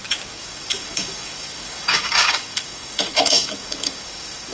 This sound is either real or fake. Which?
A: fake